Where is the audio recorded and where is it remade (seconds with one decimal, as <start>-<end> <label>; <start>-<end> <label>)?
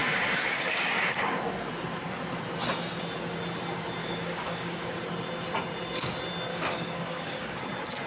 0.0-1.4 remade; 1.4-4.0 recorded; 4.0-5.0 remade; 5.0-6.5 recorded; 6.5-7.6 remade; 7.6-8.1 recorded